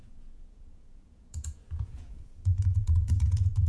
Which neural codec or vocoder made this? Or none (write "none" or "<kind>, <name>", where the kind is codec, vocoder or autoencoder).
vocoder, Vocos